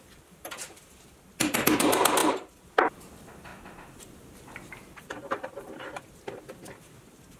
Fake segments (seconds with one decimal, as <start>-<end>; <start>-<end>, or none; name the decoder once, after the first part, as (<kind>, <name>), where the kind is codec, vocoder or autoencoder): 0.0-3.5 (vocoder, BigVGAN v2); 4.0-7.4